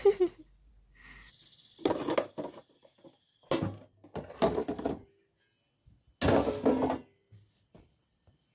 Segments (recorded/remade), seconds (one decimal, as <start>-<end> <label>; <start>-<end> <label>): 0.0-0.7 remade; 0.7-8.5 recorded

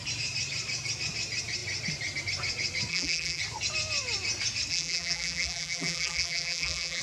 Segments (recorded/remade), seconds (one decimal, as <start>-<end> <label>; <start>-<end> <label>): 0.0-2.9 recorded; 2.9-3.4 remade; 3.4-4.7 recorded; 4.7-7.0 remade